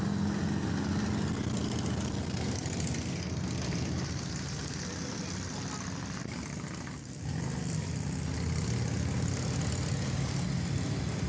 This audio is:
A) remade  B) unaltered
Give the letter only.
B